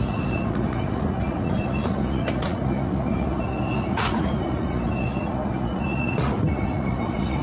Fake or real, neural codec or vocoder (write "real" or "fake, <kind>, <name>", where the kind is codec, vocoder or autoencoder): fake, vocoder, Vocos